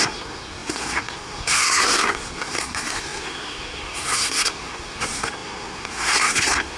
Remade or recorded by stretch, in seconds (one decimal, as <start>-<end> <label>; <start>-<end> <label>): 0.0-6.8 remade